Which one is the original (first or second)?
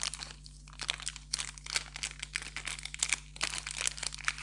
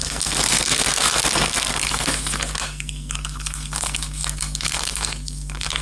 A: first